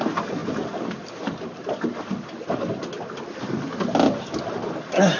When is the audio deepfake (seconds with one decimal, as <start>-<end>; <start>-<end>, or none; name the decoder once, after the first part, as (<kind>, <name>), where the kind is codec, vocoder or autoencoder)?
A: none